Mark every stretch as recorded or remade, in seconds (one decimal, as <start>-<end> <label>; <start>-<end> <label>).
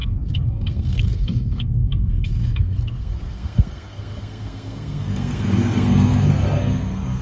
0.0-7.2 remade